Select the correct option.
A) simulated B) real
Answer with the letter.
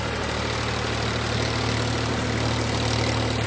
B